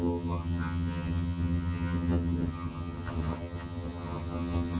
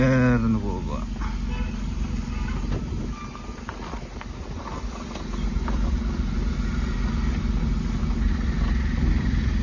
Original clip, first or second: second